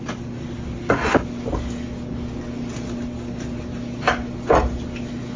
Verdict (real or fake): real